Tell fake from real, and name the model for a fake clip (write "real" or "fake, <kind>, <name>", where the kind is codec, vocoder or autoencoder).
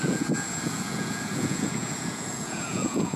fake, vocoder, Vocos